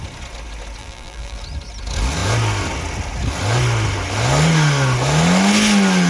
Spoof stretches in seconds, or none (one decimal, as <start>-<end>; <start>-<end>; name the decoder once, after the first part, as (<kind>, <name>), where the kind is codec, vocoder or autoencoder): 0.8-1.4 (vocoder, BigVGAN v2)